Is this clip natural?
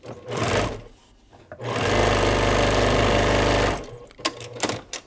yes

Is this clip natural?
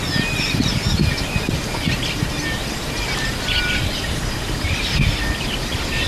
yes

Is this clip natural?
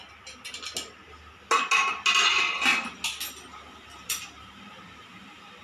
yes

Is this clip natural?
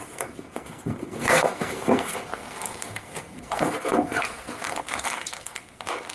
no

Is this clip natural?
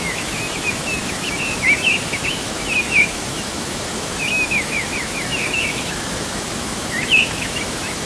no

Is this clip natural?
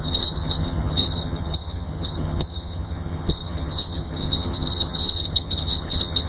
no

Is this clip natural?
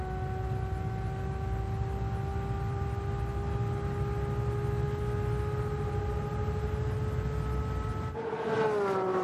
yes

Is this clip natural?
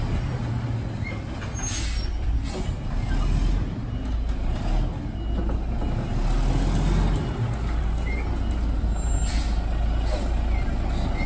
yes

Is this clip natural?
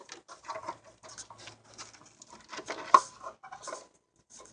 yes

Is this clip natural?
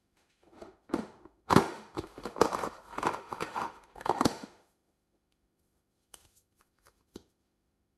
no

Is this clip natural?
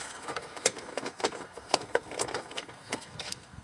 no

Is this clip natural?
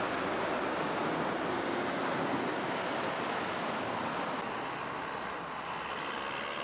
yes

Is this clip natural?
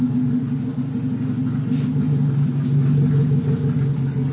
yes